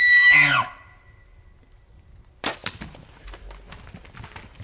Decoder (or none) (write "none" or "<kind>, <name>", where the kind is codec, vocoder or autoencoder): none